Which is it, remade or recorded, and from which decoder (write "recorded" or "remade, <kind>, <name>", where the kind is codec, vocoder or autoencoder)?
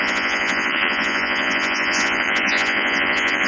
remade, vocoder, Vocos